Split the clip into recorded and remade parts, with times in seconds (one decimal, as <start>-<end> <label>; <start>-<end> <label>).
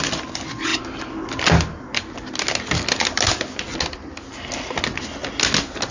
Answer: 0.0-5.9 recorded